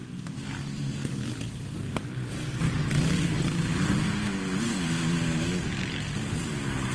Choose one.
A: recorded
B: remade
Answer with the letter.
A